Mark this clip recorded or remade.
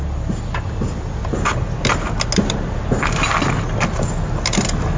recorded